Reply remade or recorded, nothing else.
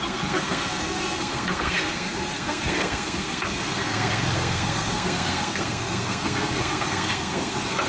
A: remade